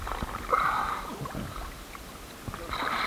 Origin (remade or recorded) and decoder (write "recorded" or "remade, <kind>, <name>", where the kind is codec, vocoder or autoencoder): recorded